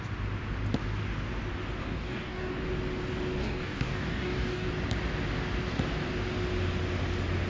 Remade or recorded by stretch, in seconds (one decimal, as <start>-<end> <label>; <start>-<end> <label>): 0.0-1.8 recorded; 1.8-2.6 remade; 2.6-3.4 recorded; 3.4-4.7 remade; 4.7-7.5 recorded